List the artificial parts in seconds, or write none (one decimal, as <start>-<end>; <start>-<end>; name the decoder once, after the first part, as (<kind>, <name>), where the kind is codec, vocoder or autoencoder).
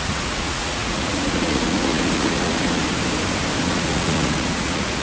0.0-2.8 (vocoder, Vocos); 3.6-5.0